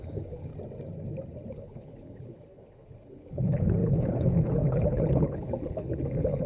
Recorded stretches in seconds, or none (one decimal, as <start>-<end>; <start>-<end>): 0.5-1.5